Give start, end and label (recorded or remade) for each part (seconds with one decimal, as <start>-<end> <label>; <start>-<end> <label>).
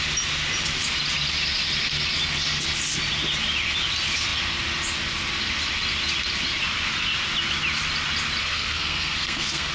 0.0-8.4 recorded; 8.4-9.7 remade